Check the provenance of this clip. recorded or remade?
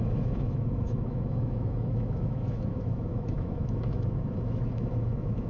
remade